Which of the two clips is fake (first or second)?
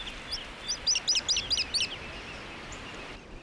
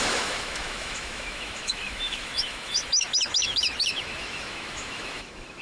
second